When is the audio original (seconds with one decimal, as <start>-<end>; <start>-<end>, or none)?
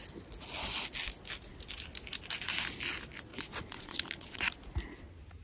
0.0-3.3; 4.4-5.4